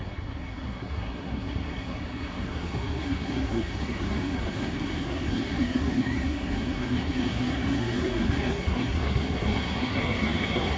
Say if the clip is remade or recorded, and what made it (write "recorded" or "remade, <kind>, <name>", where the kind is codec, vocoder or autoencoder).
remade, codec, SNAC